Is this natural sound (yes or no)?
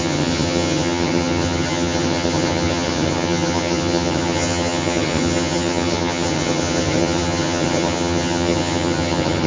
no